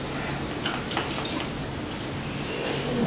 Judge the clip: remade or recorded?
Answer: recorded